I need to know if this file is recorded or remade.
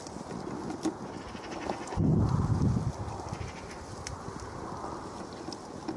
recorded